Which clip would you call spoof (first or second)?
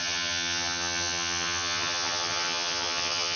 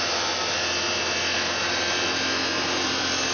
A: first